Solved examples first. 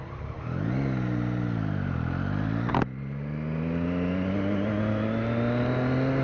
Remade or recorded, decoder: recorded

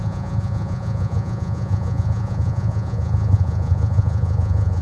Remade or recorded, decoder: remade, vocoder, Vocos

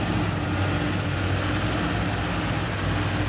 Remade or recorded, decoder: recorded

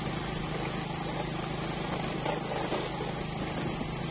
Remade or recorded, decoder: recorded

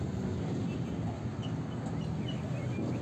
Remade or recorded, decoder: recorded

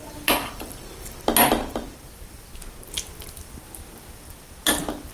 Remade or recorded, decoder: recorded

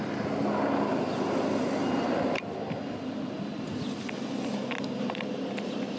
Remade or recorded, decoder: recorded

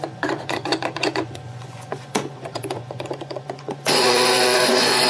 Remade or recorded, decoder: remade, vocoder, Vocos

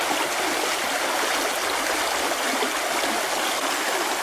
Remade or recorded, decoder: recorded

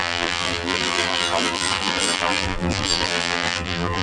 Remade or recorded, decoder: remade, vocoder, BigVGAN v2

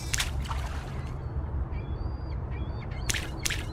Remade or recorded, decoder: remade, vocoder, BigVGAN v2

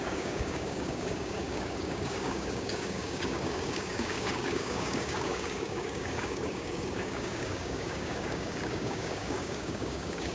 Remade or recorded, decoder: remade, codec, DAC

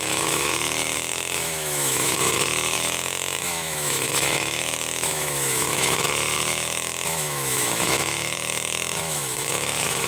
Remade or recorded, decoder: remade, autoencoder, DAC-VAE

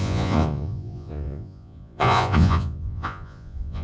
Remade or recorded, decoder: remade, vocoder, Vocos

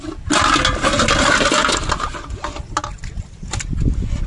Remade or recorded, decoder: recorded